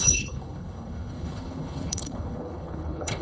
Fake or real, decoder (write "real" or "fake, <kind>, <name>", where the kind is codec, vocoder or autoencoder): fake, codec, HILCodec